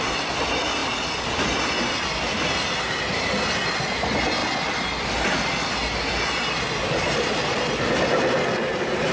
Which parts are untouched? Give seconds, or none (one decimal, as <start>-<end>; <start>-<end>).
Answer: 0.0-9.1